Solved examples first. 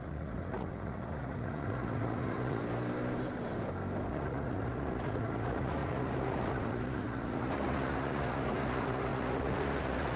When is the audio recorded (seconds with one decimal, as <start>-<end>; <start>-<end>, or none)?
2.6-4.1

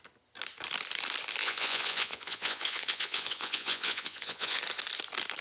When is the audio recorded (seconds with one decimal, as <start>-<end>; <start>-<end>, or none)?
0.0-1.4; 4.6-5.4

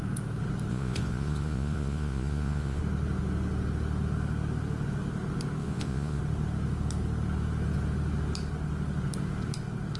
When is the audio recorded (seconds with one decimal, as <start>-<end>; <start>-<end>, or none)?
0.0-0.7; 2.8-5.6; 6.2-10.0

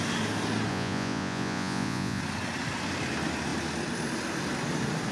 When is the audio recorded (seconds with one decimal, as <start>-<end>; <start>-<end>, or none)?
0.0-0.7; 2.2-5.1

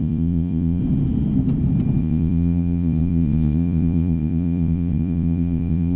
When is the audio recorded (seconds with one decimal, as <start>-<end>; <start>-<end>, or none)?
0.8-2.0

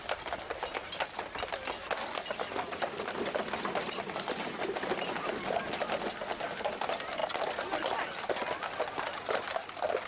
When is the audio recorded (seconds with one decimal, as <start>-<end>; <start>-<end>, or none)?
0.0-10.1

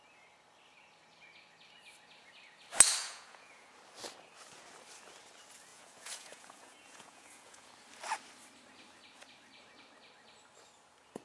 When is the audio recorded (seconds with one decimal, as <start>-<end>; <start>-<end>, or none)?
0.0-3.0; 3.7-5.7; 7.7-11.2